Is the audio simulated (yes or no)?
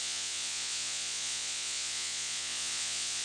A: yes